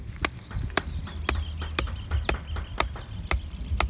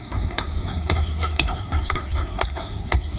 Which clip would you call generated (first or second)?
second